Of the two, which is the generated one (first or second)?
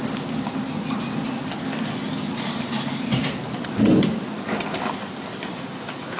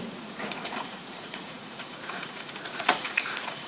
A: second